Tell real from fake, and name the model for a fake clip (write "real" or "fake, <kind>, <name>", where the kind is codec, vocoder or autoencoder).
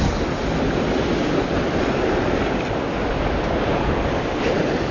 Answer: real